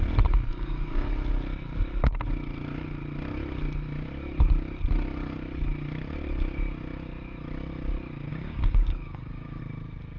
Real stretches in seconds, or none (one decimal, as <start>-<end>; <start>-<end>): 0.0-0.5; 1.1-8.3; 9.6-10.2